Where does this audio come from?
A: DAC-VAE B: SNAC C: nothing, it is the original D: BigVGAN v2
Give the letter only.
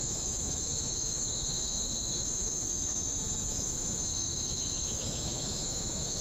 A